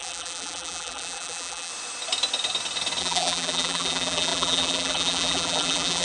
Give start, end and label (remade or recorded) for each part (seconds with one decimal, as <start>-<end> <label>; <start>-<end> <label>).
0.0-1.7 remade; 1.7-3.0 recorded; 3.0-6.0 remade